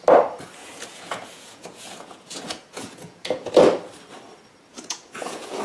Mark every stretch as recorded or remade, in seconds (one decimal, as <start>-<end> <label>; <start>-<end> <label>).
0.0-0.6 recorded; 0.6-3.5 remade; 3.5-4.7 recorded; 4.7-5.6 remade